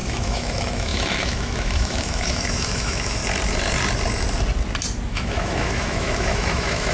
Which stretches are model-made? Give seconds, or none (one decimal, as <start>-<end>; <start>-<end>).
0.0-3.2; 5.1-6.9